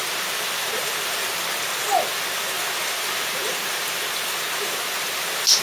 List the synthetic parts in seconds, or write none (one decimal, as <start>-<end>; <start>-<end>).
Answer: none